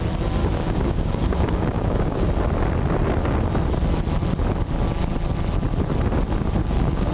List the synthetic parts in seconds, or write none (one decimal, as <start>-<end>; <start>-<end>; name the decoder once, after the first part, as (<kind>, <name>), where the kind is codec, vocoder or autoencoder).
0.4-2.3 (codec, DAC); 6.6-7.1